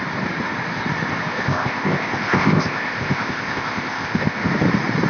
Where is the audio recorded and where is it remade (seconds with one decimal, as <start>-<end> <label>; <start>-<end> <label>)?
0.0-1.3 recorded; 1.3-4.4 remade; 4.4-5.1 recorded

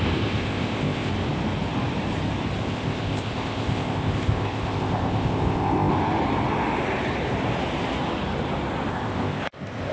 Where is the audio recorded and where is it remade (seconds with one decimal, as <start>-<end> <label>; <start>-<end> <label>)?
0.0-1.1 remade; 1.1-2.6 recorded; 2.6-5.9 remade; 5.9-8.9 recorded; 8.9-9.9 remade

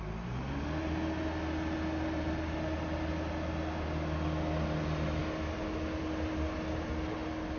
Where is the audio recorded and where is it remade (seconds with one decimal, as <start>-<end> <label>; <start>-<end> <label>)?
0.0-7.6 recorded

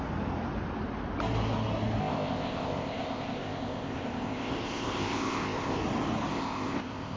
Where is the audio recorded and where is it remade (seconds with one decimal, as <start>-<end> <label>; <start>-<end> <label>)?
0.0-2.0 recorded; 2.0-5.8 remade; 5.8-6.3 recorded; 6.3-7.2 remade